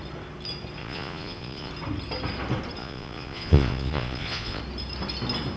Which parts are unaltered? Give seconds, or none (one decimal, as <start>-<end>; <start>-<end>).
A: 0.0-0.8; 1.7-2.8; 4.6-5.6